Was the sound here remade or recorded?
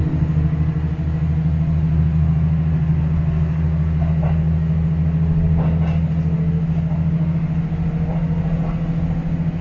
recorded